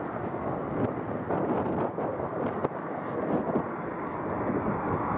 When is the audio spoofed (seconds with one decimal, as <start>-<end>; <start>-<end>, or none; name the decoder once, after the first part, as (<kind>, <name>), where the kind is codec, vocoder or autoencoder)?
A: none

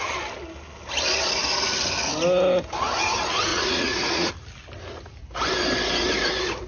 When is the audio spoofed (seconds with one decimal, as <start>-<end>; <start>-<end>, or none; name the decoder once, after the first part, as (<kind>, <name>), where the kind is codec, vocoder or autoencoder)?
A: 3.5-4.3 (vocoder, Vocos)

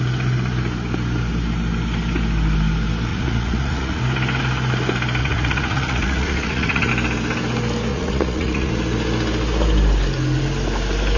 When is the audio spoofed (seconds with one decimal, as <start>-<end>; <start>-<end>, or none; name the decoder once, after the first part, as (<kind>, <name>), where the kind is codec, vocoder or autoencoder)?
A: 3.1-4.0 (vocoder, Vocos); 5.2-6.9; 7.9-8.7

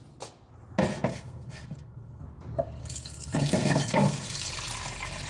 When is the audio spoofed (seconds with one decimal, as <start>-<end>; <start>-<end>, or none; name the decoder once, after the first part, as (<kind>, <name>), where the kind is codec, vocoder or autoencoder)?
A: 1.1-2.2 (codec, SNAC); 2.8-4.5

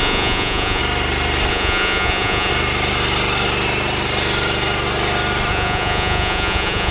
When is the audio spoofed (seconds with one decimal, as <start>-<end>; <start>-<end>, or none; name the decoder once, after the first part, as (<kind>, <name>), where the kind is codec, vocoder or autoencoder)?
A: 0.0-0.8 (vocoder, Vocos); 1.5-2.5; 5.5-6.9

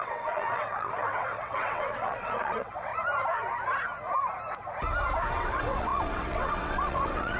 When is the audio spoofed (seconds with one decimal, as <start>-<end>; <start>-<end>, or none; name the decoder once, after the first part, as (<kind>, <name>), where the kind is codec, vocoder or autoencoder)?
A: 0.0-2.9 (vocoder, WaveNeXt); 5.3-7.4